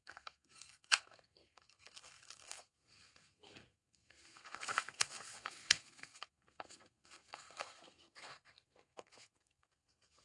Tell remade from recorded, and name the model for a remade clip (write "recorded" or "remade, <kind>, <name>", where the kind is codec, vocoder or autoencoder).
remade, codec, SNAC